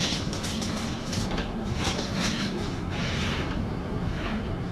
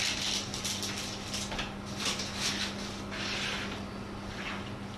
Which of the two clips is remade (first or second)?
first